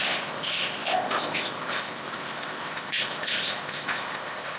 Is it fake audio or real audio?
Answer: fake